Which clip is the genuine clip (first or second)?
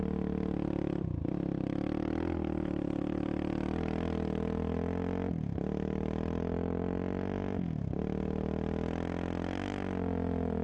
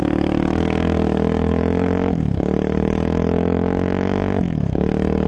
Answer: first